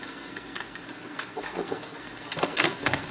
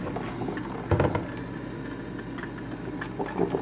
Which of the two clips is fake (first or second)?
first